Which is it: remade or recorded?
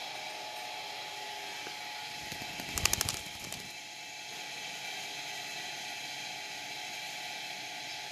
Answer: recorded